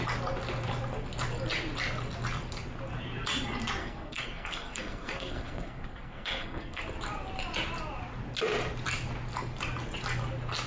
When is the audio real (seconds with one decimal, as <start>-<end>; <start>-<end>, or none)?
0.0-3.8; 6.8-10.7

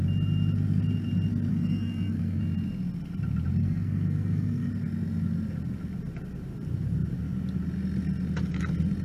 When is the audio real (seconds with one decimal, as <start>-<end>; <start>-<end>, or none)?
0.0-1.5; 2.4-3.6; 4.7-9.0

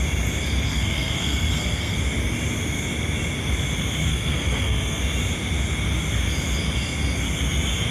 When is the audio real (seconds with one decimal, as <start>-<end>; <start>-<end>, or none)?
0.0-0.7; 2.0-4.1; 5.0-7.9

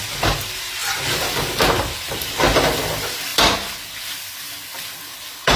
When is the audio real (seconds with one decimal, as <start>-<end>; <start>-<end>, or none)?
0.0-5.6

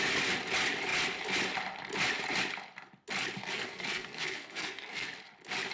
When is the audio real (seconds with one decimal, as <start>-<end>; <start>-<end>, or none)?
0.0-3.4; 5.1-5.7

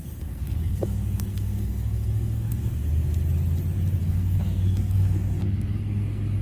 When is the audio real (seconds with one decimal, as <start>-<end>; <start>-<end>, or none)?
2.8-4.0